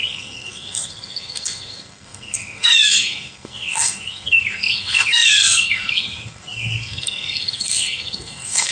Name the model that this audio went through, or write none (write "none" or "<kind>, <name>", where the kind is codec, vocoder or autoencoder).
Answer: codec, SNAC